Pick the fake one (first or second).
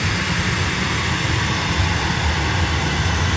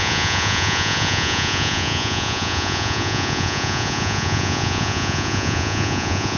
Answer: second